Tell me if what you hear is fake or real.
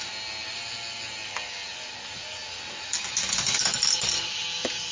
real